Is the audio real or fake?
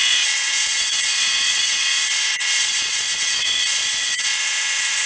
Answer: fake